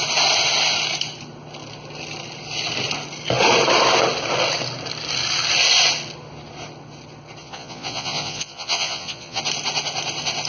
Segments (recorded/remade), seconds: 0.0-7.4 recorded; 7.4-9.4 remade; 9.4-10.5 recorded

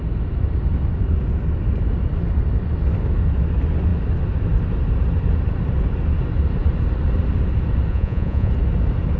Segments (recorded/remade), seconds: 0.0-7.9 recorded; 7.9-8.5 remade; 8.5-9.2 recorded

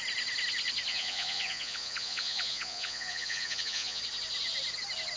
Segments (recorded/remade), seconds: 0.0-0.9 recorded; 0.9-4.0 remade; 4.0-5.2 recorded

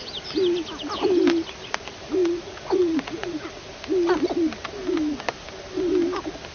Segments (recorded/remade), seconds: 0.0-2.2 recorded; 2.2-3.6 remade; 3.6-6.5 recorded

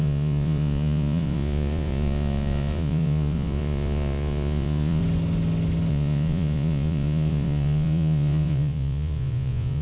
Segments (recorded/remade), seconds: 0.0-5.0 remade; 5.0-5.9 recorded; 5.9-9.8 remade

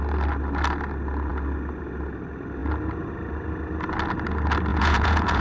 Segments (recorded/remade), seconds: 0.0-4.7 recorded; 4.7-5.4 remade